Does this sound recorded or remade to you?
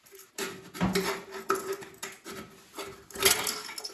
recorded